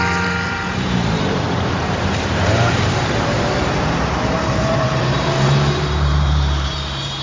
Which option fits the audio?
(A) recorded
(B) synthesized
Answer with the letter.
B